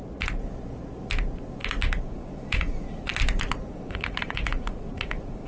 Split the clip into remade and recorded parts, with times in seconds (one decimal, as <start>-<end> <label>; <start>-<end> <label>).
0.0-2.1 recorded; 2.1-3.1 remade; 3.1-3.7 recorded; 3.7-5.5 remade